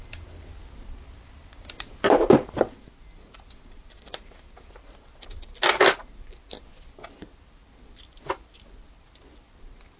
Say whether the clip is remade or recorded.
recorded